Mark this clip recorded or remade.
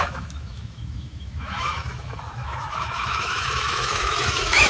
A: remade